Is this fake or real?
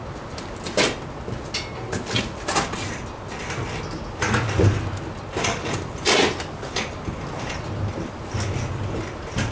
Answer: real